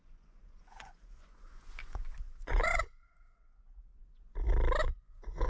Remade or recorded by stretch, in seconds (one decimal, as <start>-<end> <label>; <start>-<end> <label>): 0.0-3.9 remade; 3.9-4.8 recorded; 4.8-5.5 remade